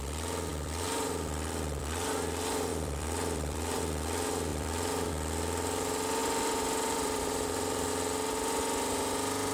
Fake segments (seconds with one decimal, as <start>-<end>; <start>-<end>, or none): 0.5-1.8; 2.7-3.8; 4.5-5.1; 6.2-7.9